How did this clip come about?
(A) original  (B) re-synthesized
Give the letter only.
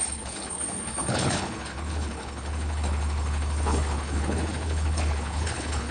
B